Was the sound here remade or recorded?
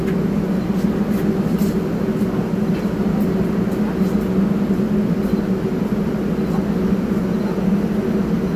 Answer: recorded